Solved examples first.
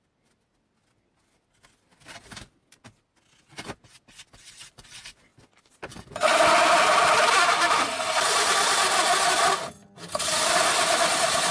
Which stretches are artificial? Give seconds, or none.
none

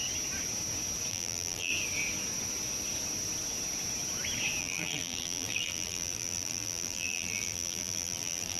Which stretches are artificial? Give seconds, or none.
1.1-1.7 (vocoder, BigVGAN v2); 4.6-8.6

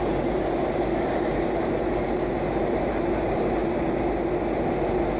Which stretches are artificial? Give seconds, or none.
0.0-1.8 (vocoder, BigVGAN v2); 2.7-3.6

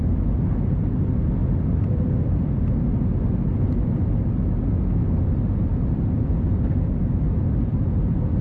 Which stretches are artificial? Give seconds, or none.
1.4-2.5 (vocoder, BigVGAN v2); 5.7-7.6